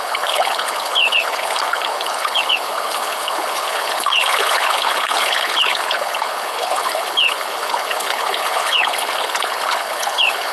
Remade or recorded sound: remade